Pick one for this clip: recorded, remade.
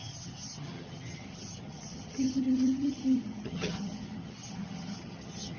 remade